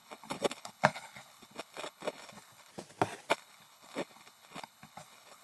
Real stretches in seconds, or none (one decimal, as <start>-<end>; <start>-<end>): 2.7-3.3

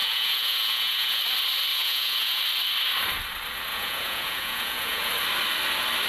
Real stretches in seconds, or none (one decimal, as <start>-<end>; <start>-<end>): 1.2-1.7; 2.4-3.7; 5.1-6.1

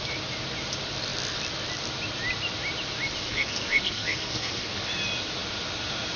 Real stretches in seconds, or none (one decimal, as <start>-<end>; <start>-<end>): 0.0-3.3; 4.7-6.2

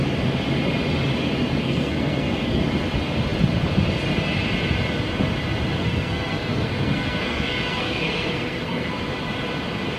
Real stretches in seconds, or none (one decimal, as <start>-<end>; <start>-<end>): 0.0-1.6; 2.6-5.8; 8.9-10.0

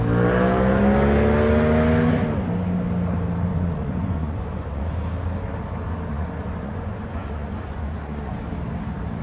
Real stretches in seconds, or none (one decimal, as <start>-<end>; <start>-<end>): 0.0-3.5; 4.9-6.1; 8.3-9.2

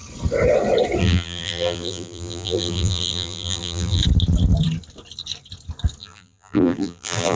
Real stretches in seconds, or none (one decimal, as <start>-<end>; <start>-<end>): 0.0-1.0; 4.0-6.0